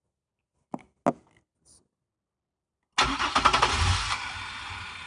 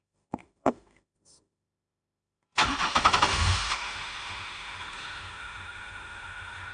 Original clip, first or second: first